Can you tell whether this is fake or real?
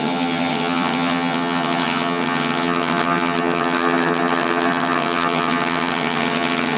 fake